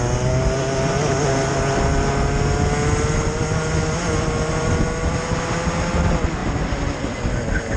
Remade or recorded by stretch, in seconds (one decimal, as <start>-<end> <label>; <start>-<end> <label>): 0.0-7.8 recorded